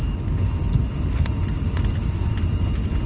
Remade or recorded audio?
recorded